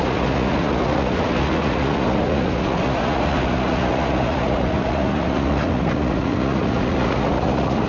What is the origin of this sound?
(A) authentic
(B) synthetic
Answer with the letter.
B